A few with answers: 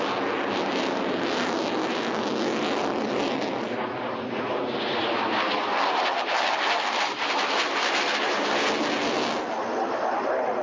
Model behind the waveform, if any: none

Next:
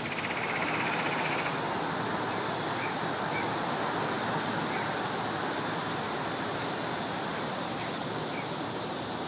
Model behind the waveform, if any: none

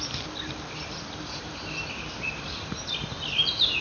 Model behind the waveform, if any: none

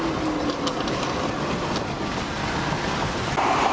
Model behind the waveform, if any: none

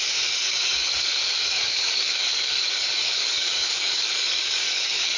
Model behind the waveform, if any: codec, DAC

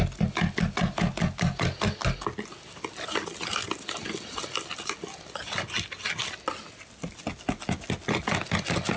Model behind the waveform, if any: none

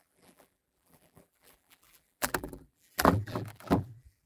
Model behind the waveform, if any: vocoder, BigVGAN v2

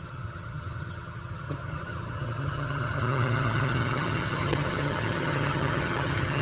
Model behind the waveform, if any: vocoder, HiFi-GAN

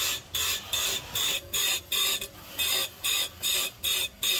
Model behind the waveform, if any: none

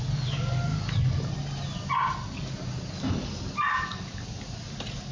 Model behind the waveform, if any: none